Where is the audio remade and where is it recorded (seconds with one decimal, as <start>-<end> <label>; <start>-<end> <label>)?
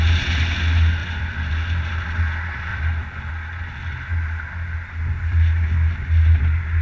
0.0-1.0 recorded; 1.0-1.5 remade; 1.5-2.7 recorded; 2.7-3.3 remade; 3.3-6.8 recorded